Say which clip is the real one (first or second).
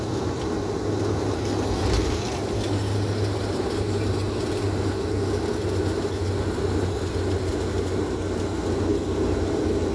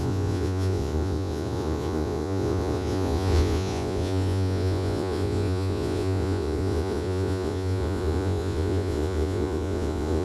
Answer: first